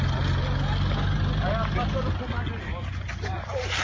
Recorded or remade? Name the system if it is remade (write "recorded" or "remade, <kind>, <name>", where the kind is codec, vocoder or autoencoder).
recorded